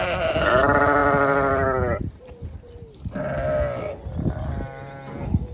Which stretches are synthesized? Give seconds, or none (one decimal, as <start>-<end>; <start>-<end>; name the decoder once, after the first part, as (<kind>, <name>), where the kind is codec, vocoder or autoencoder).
none